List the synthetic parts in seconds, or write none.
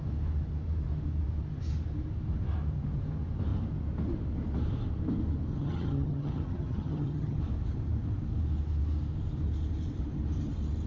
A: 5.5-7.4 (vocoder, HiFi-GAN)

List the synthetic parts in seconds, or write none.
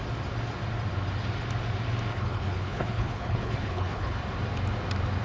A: 2.1-4.2 (codec, HILCodec)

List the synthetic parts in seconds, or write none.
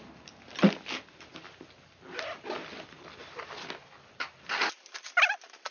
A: none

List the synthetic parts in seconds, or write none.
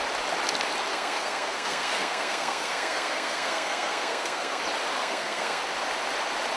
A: 0.9-4.6 (codec, SNAC); 5.0-5.6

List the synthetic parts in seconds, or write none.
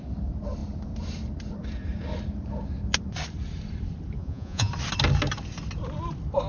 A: 4.2-4.7 (vocoder, Vocos)